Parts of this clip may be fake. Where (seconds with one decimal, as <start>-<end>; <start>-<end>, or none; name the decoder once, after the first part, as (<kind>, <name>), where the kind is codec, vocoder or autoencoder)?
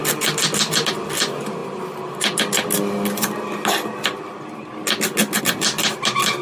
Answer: none